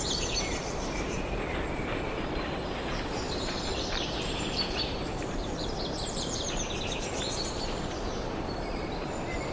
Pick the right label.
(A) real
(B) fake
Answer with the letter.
B